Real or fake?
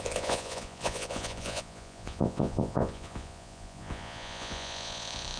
fake